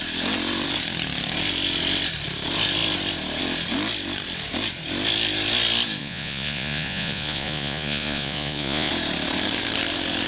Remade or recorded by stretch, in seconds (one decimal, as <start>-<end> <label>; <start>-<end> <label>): 0.0-6.0 recorded; 6.0-8.9 remade; 8.9-10.3 recorded

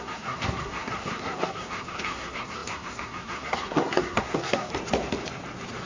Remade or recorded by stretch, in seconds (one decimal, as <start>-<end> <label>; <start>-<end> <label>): 0.0-4.7 remade; 4.7-5.9 recorded